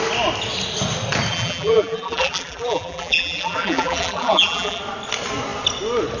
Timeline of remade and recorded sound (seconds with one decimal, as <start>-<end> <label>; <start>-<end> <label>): 0.0-1.3 recorded; 1.3-4.8 remade; 4.8-6.2 recorded